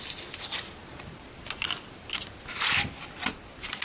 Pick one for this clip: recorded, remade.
recorded